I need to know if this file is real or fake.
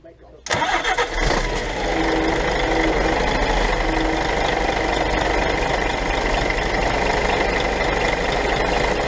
real